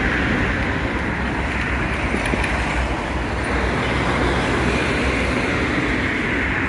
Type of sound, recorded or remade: recorded